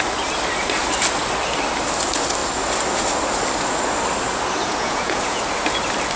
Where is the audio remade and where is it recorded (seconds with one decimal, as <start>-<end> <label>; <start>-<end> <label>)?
0.0-4.6 recorded; 4.6-5.4 remade; 5.4-6.2 recorded